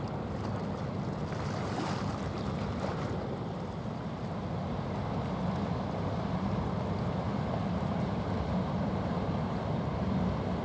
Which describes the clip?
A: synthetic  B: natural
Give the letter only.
B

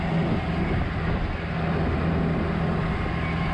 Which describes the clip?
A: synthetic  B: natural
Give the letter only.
B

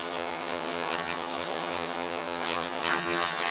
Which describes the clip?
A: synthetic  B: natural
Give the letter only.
A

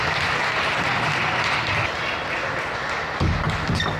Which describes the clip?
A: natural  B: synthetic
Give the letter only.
A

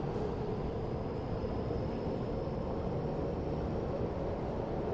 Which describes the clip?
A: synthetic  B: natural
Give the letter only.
B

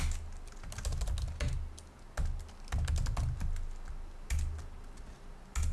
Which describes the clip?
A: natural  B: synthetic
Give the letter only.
A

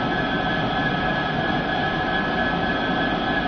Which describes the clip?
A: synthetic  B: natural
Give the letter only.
B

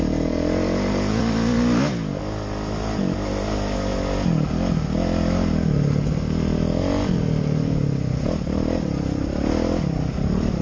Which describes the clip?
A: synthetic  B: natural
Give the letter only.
B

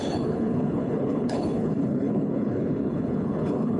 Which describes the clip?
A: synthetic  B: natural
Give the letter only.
A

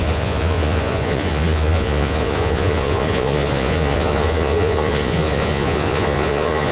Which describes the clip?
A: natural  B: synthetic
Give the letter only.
B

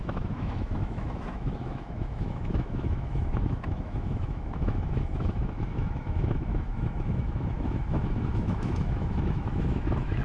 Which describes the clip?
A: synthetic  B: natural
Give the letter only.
A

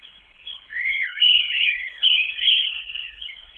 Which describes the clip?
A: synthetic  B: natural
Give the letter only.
A